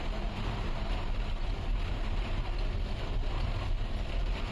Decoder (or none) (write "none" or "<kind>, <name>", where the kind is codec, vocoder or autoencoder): none